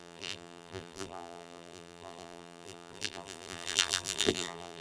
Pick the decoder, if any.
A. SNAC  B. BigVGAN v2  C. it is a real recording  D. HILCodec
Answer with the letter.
B